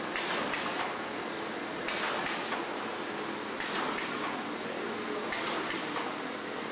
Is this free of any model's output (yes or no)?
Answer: yes